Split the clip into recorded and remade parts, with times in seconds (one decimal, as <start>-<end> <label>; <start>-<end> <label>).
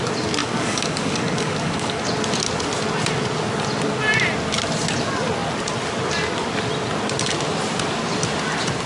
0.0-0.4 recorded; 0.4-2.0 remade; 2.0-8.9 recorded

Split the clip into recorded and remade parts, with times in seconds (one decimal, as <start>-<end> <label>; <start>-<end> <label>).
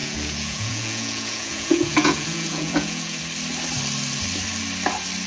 0.0-3.2 remade; 3.2-5.3 recorded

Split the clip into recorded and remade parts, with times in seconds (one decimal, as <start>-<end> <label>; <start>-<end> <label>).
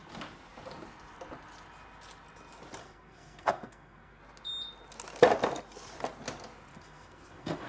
0.0-2.8 recorded; 2.8-4.2 remade; 4.2-6.7 recorded; 6.7-7.7 remade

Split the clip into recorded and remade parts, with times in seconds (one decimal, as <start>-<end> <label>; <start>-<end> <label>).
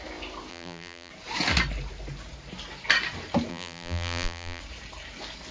0.0-0.5 recorded; 0.5-1.1 remade; 1.1-3.5 recorded; 3.5-4.6 remade; 4.6-5.5 recorded